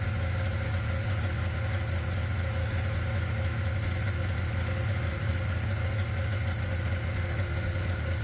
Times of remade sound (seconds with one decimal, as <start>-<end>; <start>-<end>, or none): 4.8-5.3